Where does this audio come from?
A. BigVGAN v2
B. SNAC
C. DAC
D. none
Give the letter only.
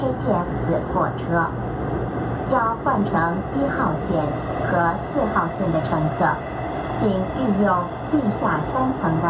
D